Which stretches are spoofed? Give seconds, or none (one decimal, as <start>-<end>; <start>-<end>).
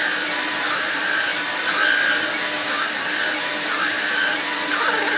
0.0-1.3; 3.2-5.2